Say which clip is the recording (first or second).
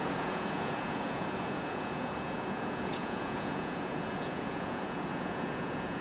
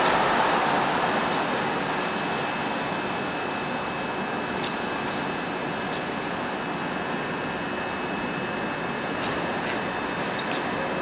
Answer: second